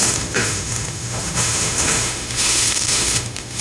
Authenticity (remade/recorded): remade